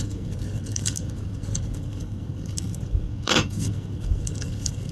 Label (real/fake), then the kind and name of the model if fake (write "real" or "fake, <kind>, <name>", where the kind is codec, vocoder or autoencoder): fake, codec, SNAC